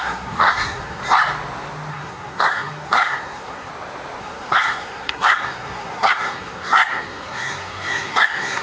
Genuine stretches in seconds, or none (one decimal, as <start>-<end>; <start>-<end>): 1.0-1.9; 3.7-4.2